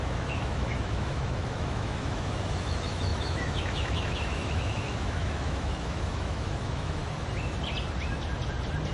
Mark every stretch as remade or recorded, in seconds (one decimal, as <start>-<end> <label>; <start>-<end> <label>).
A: 0.0-7.0 remade; 7.0-8.9 recorded